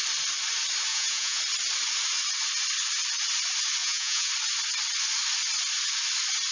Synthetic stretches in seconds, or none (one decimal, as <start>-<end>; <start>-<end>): 0.9-1.4; 3.8-4.3